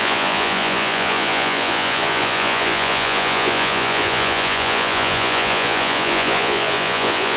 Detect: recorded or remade remade